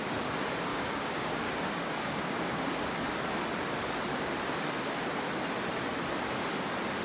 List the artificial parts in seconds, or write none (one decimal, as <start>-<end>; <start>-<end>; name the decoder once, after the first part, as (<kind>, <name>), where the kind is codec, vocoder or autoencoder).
0.7-2.7 (codec, DAC)